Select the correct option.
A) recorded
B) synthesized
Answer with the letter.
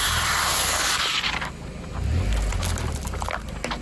A